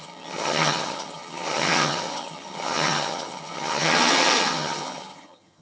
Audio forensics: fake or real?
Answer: fake